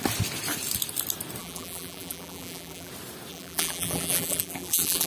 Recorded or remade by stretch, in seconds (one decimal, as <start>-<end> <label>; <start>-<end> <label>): 0.0-1.4 recorded; 1.4-2.9 remade; 2.9-3.3 recorded; 3.3-5.1 remade